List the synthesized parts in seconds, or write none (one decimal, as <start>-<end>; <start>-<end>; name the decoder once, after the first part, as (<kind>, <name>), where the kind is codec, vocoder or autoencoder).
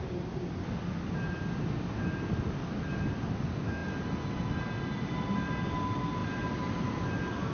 none